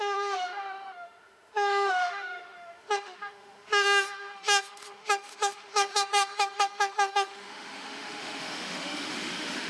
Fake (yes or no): yes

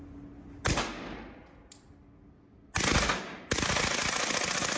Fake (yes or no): no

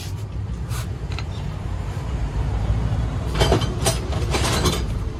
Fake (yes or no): yes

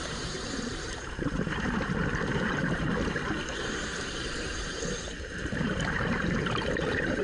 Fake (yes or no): yes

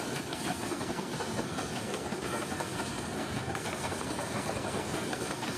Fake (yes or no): yes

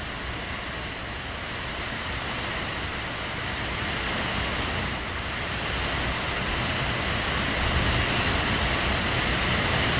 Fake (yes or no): no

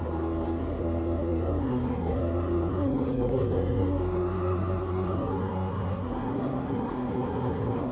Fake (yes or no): yes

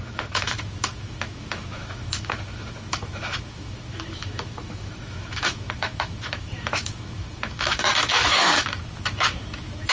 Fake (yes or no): yes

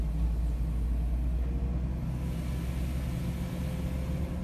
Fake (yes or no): no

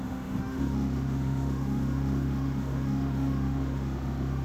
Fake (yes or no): yes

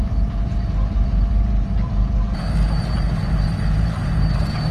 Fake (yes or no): yes